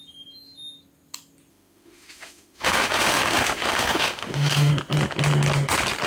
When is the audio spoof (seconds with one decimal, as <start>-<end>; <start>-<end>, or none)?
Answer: 1.5-4.7